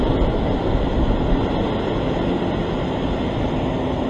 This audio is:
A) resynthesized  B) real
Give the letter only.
B